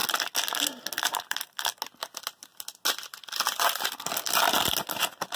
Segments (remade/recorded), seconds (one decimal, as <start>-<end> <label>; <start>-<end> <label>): 0.0-5.4 recorded